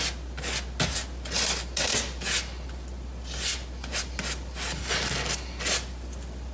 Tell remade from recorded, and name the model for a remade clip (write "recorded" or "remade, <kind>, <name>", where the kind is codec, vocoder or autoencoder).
recorded